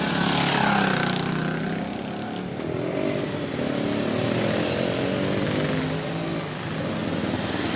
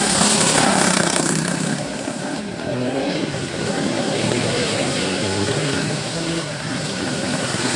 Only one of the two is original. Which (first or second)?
first